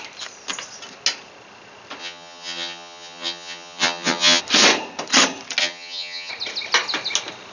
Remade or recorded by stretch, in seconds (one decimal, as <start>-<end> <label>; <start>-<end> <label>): 0.0-2.0 recorded; 2.0-4.4 remade; 4.4-5.6 recorded; 5.6-6.3 remade; 6.3-7.5 recorded